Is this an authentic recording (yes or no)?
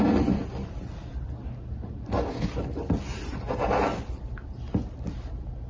yes